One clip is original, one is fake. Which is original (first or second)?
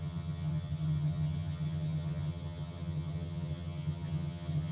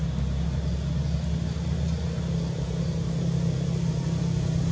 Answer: second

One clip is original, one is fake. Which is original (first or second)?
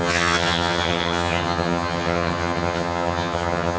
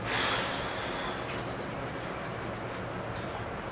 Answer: second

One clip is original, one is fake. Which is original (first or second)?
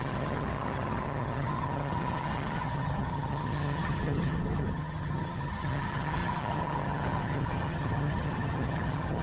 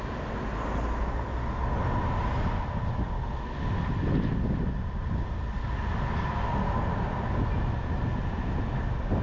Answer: second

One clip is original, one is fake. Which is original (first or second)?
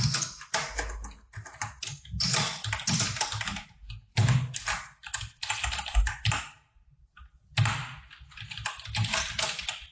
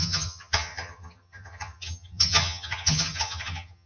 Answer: first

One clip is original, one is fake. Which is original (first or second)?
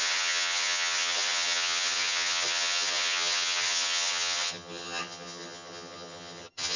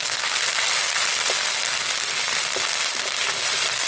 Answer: second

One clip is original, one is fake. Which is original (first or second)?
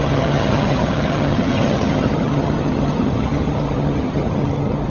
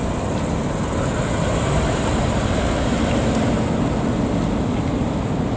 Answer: second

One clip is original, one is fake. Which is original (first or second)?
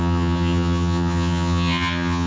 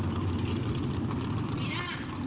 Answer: second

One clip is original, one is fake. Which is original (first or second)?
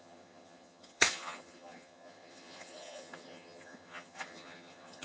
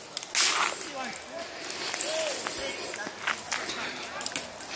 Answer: second